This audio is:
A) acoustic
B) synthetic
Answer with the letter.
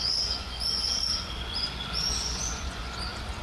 B